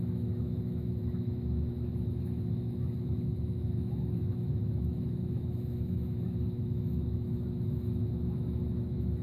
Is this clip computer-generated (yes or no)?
yes